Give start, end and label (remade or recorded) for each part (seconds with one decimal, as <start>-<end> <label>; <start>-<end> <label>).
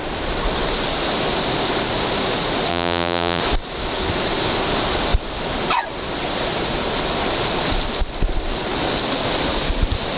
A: 0.0-2.7 recorded; 2.7-3.4 remade; 3.4-10.2 recorded